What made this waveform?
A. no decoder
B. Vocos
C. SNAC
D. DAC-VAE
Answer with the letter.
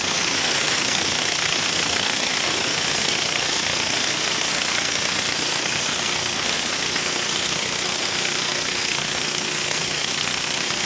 C